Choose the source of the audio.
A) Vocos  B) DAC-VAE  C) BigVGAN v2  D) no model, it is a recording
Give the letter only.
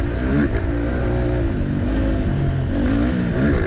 D